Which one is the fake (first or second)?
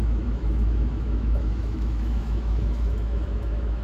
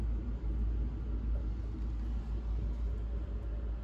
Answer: first